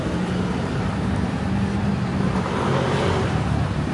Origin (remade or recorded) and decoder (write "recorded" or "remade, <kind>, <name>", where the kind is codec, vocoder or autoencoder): remade, vocoder, BigVGAN v2